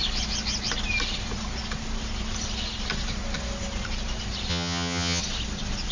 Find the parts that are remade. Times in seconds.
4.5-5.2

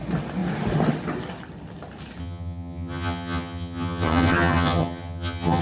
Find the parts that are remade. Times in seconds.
2.2-5.6

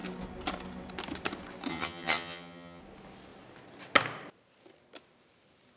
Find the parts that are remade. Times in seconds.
1.7-2.8